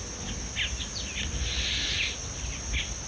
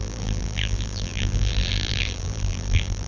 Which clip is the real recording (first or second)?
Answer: first